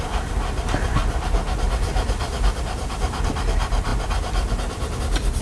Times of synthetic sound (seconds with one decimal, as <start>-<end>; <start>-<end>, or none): 0.0-1.0; 1.5-5.4